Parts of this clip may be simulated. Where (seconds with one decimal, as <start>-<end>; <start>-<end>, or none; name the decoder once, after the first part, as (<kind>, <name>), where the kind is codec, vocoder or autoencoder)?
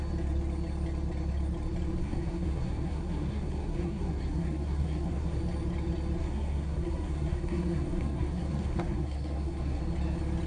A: 2.0-5.4 (codec, SNAC); 6.2-9.8